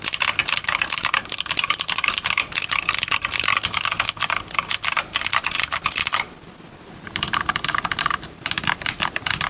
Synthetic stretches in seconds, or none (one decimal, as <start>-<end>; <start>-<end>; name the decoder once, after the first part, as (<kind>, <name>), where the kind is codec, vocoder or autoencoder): none